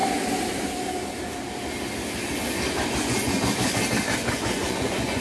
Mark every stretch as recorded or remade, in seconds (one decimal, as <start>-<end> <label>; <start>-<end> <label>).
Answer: 0.0-3.0 recorded; 3.0-3.8 remade; 3.8-4.2 recorded; 4.2-5.2 remade